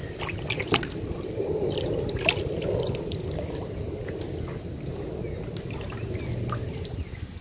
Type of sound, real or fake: real